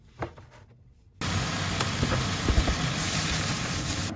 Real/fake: real